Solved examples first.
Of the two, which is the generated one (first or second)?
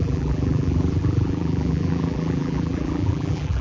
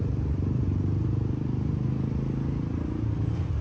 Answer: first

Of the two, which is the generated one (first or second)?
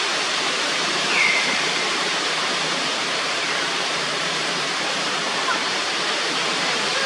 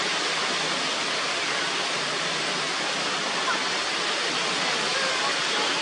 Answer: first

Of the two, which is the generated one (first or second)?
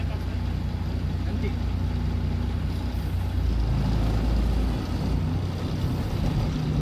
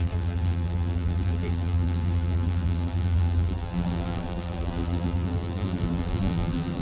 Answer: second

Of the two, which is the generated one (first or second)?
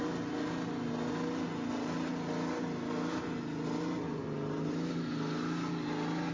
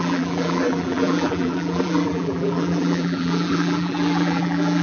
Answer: second